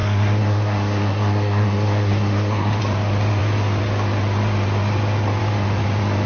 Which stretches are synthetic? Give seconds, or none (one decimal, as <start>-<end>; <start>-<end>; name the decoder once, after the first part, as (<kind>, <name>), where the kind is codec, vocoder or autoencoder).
0.0-2.8 (codec, SNAC)